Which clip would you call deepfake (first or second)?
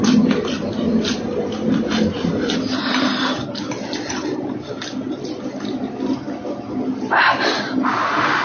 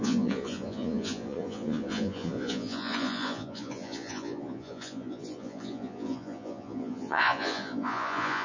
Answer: second